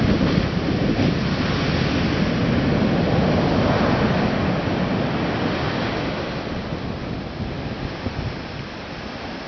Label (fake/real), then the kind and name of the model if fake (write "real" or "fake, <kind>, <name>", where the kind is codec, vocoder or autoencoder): real